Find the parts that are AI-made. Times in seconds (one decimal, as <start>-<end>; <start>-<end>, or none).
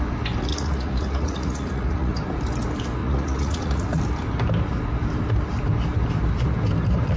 0.5-2.2; 3.0-4.0